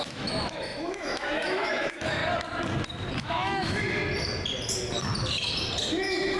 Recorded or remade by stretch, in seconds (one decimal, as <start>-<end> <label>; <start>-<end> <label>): 0.0-2.2 remade; 2.2-3.2 recorded; 3.2-4.0 remade; 4.0-5.9 recorded; 5.9-6.4 remade